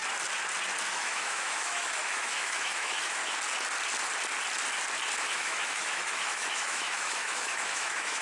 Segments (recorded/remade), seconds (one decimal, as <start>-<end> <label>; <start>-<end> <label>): 0.0-0.9 recorded; 0.9-3.2 remade; 3.2-5.2 recorded; 5.2-8.2 remade